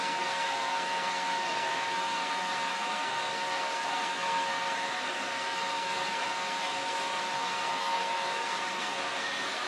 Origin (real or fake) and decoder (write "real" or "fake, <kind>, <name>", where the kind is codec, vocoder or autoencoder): fake, codec, SNAC